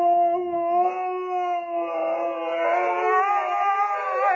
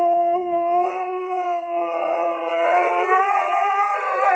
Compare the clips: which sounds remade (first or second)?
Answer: second